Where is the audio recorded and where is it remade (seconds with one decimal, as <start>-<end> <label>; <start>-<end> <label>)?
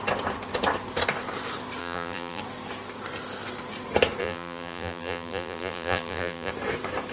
0.0-1.8 recorded; 1.8-2.4 remade; 2.4-4.2 recorded; 4.2-6.5 remade; 6.5-7.1 recorded